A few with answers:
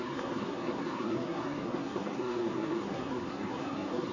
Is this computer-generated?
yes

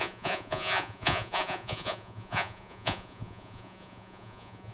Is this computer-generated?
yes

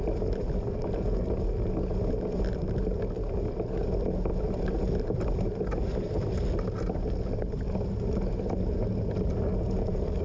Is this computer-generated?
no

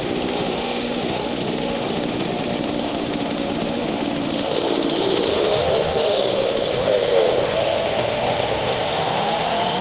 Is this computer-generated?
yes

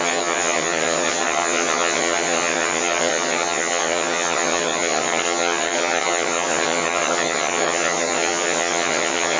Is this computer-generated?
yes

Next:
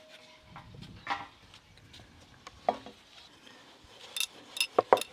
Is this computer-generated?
no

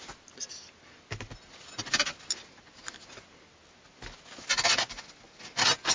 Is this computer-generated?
no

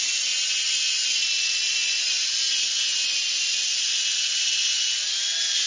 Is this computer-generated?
no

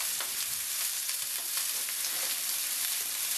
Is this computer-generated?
yes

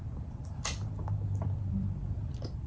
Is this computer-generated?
yes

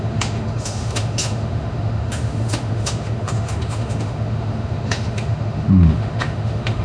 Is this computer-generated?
yes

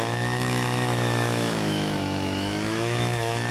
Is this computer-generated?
yes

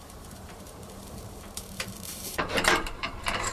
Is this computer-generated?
yes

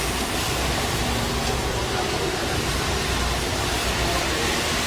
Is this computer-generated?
yes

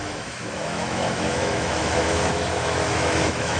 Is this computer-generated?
yes